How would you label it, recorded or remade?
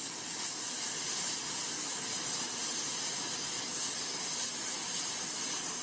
recorded